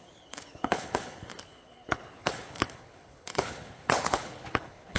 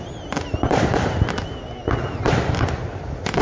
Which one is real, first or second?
second